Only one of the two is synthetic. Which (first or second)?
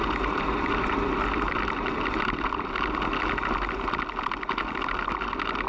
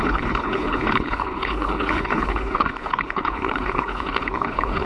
second